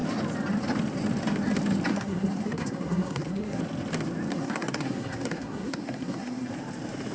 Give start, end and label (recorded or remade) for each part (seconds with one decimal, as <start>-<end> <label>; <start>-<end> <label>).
0.0-1.9 recorded; 1.9-3.6 remade; 3.6-4.3 recorded; 4.3-6.5 remade; 6.5-7.1 recorded